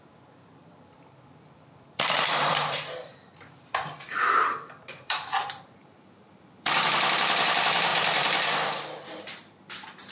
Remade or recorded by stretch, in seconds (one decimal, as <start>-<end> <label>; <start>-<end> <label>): 0.0-10.1 remade